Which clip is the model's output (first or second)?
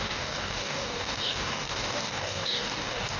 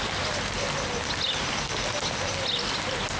first